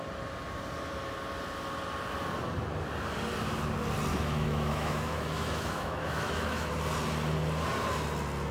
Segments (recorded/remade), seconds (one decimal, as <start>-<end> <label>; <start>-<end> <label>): 0.0-4.1 recorded; 4.1-6.7 remade; 6.7-8.5 recorded

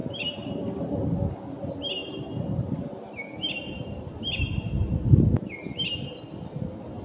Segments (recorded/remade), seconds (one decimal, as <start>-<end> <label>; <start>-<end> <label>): 0.0-1.0 remade; 1.0-2.0 recorded; 2.0-6.2 remade; 6.2-7.0 recorded

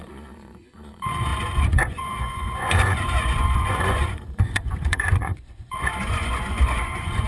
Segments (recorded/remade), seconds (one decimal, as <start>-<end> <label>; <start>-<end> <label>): 0.0-7.3 remade

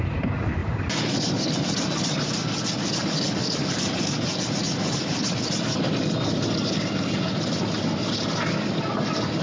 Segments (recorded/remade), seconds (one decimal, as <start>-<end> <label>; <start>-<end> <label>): 0.0-9.4 recorded

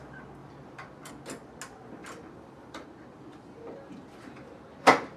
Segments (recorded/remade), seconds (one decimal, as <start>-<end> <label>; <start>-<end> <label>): 0.0-0.4 recorded; 0.4-1.1 remade; 1.1-2.0 recorded; 2.0-5.2 remade